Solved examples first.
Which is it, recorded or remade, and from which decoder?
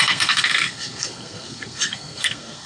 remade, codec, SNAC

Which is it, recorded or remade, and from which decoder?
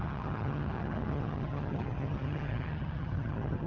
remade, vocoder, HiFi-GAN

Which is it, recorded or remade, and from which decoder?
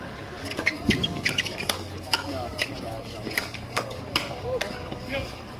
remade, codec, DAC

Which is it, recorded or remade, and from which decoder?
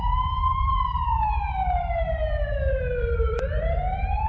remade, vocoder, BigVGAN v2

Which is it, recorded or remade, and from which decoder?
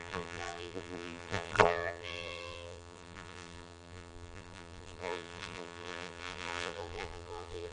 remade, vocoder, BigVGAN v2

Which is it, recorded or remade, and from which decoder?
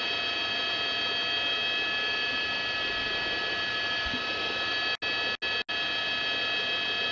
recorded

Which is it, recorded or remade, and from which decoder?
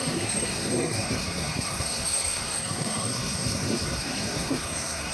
remade, codec, SNAC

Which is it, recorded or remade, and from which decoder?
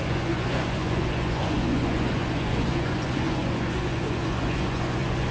remade, vocoder, Vocos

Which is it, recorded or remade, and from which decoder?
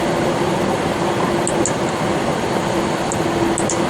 recorded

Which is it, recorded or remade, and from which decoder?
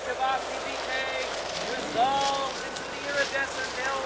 recorded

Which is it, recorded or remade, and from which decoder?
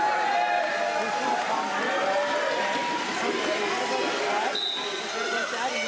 recorded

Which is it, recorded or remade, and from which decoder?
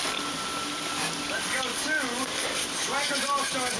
recorded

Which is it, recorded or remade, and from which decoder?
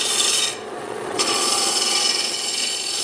remade, vocoder, Vocos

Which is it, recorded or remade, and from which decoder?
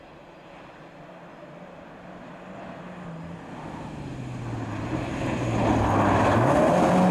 recorded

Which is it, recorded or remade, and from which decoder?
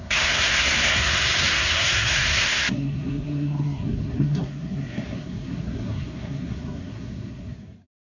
remade, codec, SNAC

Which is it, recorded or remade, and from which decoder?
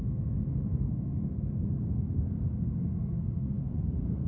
remade, codec, SNAC